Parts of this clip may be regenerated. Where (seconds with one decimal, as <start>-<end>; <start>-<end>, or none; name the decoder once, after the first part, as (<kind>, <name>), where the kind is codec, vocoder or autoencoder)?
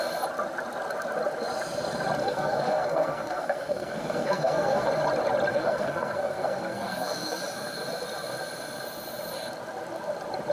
2.2-4.9 (codec, SNAC); 5.5-7.4